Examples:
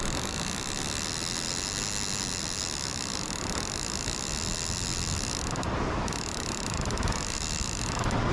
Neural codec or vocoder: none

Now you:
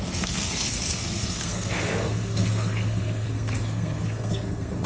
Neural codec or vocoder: codec, SNAC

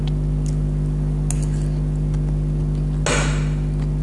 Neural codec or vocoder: none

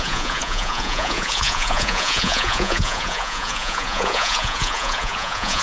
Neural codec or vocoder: vocoder, Vocos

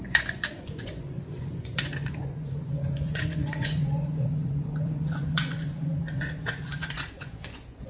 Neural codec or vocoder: vocoder, Vocos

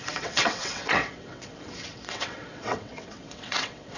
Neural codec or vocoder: vocoder, WaveNeXt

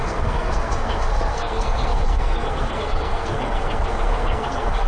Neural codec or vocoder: codec, SNAC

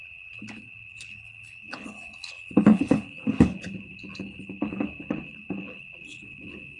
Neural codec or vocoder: codec, HILCodec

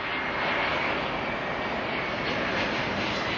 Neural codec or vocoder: none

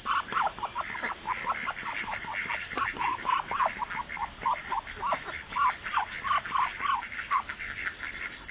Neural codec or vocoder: none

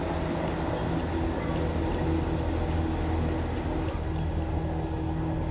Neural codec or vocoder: none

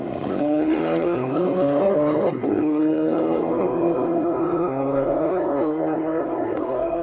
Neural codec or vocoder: codec, SNAC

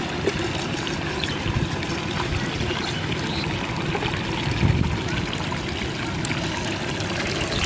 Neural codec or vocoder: none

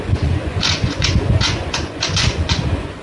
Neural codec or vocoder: vocoder, Vocos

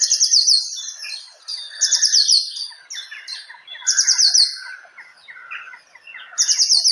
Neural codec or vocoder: none